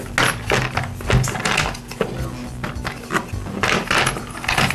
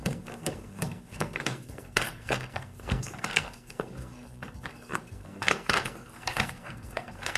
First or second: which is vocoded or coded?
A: second